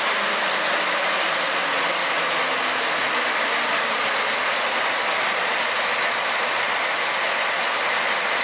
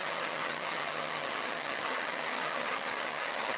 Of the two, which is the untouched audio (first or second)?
first